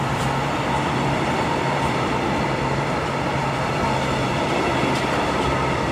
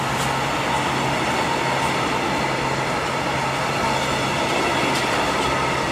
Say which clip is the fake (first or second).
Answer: first